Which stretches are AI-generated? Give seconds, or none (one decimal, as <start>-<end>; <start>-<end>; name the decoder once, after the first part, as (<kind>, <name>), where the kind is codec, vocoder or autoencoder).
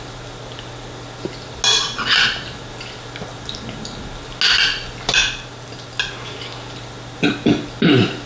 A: none